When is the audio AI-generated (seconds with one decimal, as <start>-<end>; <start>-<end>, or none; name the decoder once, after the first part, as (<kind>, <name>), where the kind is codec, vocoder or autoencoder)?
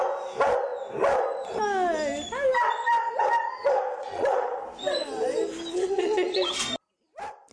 4.0-4.6 (vocoder, Vocos); 5.7-6.5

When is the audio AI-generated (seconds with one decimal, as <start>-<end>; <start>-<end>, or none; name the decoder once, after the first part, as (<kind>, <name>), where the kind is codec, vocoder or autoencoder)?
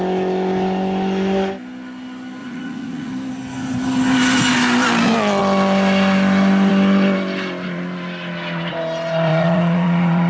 2.4-3.1 (vocoder, Vocos); 9.3-10.3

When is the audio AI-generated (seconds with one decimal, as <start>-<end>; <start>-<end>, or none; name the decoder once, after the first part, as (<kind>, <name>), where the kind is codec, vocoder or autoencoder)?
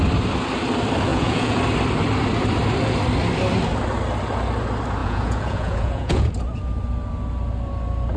1.1-1.6 (vocoder, Vocos); 5.0-6.3